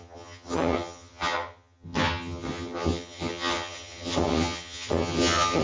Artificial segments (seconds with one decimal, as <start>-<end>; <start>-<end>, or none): 0.0-5.6